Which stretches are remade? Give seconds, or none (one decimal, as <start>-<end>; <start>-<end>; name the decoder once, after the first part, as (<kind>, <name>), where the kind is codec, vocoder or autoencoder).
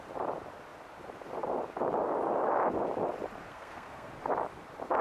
3.5-4.1 (codec, SNAC)